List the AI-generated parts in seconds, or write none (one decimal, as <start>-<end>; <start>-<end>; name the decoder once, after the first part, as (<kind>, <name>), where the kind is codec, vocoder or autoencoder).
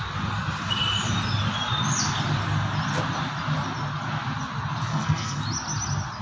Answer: 4.9-5.4 (codec, SNAC)